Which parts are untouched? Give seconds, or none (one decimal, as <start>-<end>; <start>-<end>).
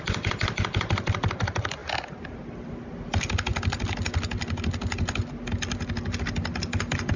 0.0-7.2